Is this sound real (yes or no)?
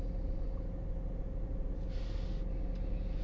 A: yes